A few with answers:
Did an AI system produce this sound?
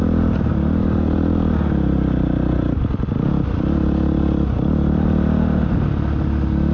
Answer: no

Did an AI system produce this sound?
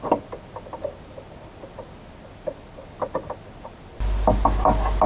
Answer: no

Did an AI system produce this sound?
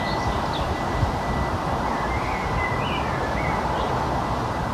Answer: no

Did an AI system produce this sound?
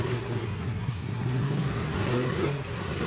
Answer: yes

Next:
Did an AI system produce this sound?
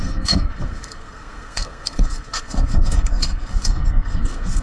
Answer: yes